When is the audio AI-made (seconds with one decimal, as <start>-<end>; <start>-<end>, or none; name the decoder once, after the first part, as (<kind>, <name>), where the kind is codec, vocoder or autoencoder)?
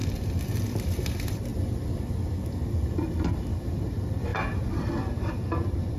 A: 0.0-1.5 (vocoder, BigVGAN v2); 2.9-4.3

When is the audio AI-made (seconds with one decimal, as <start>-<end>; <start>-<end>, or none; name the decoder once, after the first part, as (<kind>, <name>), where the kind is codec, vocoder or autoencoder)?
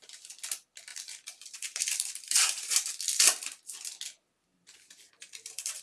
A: 0.9-2.9 (vocoder, BigVGAN v2); 4.5-5.8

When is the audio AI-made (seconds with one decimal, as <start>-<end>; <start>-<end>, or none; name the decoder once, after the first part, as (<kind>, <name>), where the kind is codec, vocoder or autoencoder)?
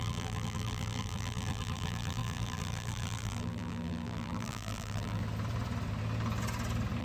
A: 0.0-5.2 (vocoder, BigVGAN v2)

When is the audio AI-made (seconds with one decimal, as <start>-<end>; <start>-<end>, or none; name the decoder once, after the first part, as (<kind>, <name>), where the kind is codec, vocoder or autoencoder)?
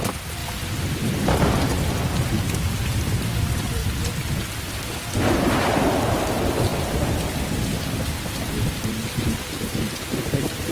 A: 0.0-10.7 (vocoder, BigVGAN v2)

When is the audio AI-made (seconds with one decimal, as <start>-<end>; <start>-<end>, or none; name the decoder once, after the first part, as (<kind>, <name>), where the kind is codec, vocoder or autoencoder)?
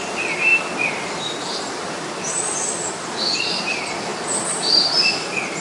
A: 0.0-4.1 (vocoder, BigVGAN v2); 4.7-5.6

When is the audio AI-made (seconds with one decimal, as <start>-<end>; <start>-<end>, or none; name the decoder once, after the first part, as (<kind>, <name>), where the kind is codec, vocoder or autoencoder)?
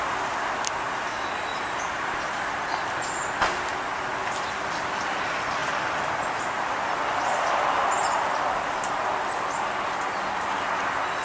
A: 1.5-2.2 (vocoder, BigVGAN v2); 8.0-9.1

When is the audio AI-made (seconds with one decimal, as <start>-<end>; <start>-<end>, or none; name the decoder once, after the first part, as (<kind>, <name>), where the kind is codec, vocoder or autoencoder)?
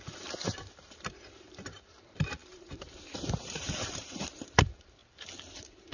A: 0.0-5.0 (vocoder, BigVGAN v2); 5.5-5.9